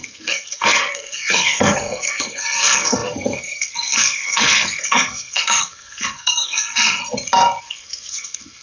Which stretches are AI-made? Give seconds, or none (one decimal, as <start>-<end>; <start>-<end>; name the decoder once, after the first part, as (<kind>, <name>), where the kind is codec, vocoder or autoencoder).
0.0-7.0 (codec, SNAC); 7.6-8.6